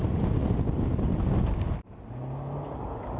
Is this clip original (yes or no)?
yes